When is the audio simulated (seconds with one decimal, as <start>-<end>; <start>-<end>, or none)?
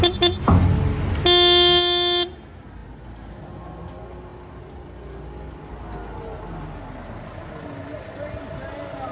none